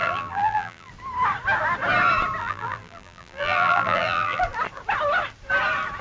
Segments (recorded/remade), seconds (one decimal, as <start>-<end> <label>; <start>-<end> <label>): 0.0-0.9 remade; 0.9-2.4 recorded; 2.4-4.4 remade; 4.4-6.0 recorded